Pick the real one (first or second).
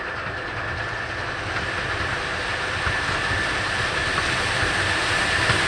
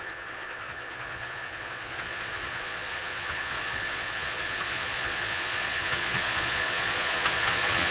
first